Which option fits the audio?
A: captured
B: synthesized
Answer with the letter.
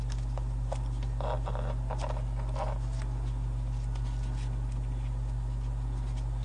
A